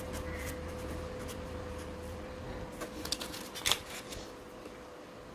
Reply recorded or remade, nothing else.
recorded